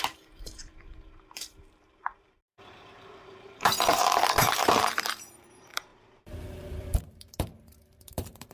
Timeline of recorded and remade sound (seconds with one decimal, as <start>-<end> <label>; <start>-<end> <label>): 0.0-8.5 remade